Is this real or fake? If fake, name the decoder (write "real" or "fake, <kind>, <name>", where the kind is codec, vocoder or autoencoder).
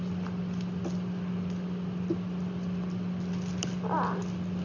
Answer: real